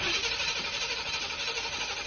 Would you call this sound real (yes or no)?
yes